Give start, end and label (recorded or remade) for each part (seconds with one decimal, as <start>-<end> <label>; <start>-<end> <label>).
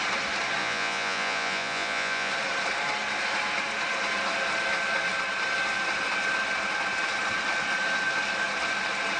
0.0-0.6 recorded; 0.6-2.3 remade; 2.3-9.2 recorded